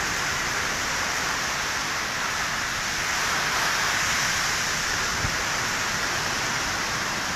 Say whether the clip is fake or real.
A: real